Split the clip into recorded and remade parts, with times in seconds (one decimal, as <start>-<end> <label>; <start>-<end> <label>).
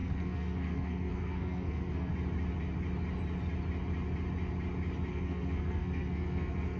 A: 0.0-2.1 remade; 2.1-5.1 recorded; 5.1-6.8 remade